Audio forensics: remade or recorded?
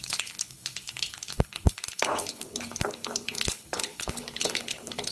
remade